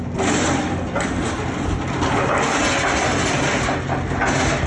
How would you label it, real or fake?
real